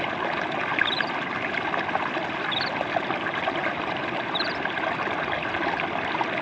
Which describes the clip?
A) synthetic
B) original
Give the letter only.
B